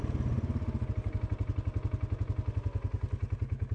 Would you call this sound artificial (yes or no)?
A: no